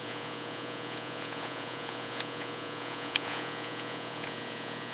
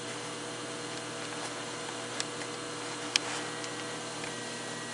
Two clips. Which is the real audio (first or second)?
second